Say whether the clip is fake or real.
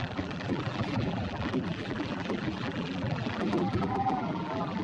fake